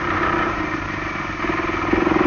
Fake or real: real